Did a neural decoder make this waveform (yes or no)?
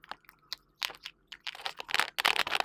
no